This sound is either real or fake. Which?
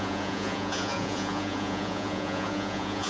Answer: fake